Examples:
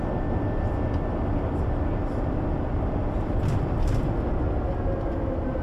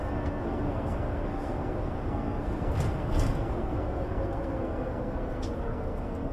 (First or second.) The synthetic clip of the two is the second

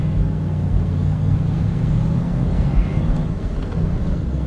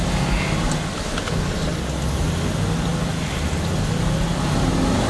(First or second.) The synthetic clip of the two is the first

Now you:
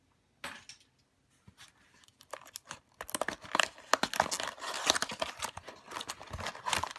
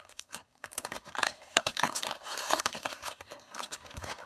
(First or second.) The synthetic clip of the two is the second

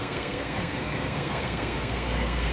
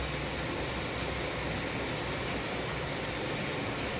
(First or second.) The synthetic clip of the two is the first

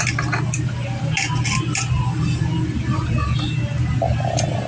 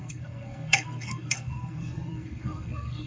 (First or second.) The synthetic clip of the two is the second